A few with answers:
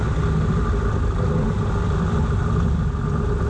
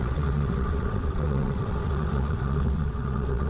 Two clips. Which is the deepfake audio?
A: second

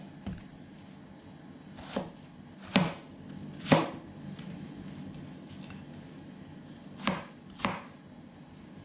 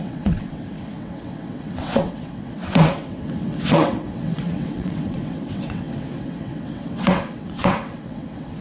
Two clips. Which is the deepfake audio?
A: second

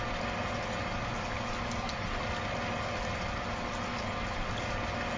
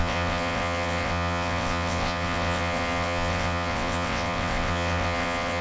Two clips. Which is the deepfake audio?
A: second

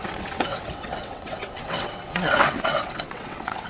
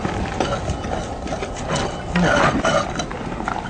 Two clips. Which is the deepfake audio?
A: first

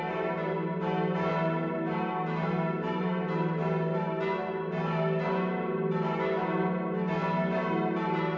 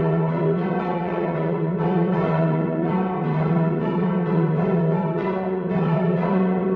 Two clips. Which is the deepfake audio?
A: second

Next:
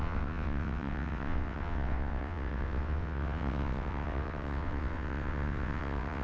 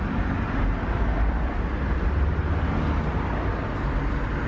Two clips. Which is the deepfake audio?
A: first